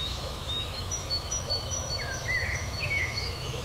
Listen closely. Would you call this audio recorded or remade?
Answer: remade